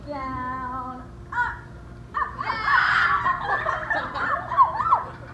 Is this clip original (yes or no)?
yes